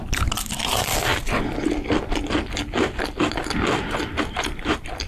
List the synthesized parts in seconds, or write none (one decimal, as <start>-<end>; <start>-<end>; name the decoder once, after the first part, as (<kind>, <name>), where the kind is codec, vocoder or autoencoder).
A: 0.0-1.1 (vocoder, BigVGAN v2); 4.2-5.1